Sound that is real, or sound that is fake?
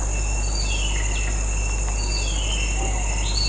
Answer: real